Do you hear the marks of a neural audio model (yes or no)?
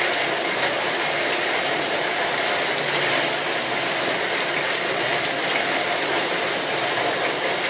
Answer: no